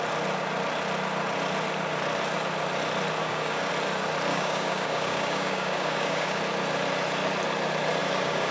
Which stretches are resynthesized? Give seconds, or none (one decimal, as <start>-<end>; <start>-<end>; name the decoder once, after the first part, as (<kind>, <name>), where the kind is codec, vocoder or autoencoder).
3.2-3.7 (codec, DAC); 4.3-6.4; 8.0-8.5

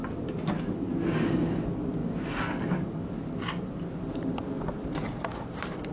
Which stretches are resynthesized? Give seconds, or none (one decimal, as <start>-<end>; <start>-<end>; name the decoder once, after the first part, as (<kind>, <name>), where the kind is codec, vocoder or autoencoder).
none

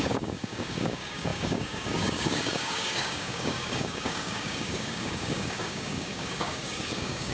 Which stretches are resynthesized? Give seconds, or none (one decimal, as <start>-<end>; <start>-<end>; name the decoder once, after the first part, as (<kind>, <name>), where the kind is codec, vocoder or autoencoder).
0.0-7.3 (codec, DAC)

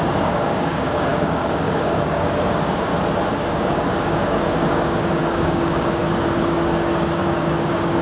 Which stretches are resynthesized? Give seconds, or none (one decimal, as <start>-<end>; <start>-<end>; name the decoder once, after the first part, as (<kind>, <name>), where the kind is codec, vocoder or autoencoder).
0.0-2.9 (codec, DAC); 3.5-8.0